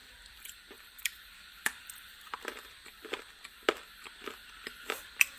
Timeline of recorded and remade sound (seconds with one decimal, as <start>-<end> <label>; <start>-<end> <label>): 0.0-3.2 remade; 3.2-5.4 recorded